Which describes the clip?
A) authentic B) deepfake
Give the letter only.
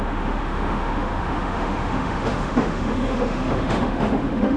B